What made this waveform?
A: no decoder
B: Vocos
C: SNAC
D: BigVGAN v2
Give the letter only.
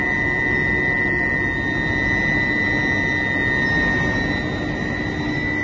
A